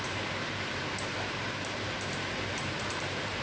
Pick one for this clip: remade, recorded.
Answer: remade